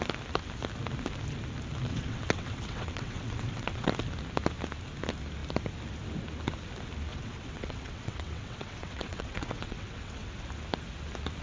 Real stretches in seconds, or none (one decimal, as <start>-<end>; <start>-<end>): 0.0-1.9; 3.9-7.1; 10.3-11.4